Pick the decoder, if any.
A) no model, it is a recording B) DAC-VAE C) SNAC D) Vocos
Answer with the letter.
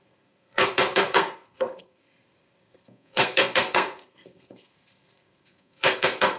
C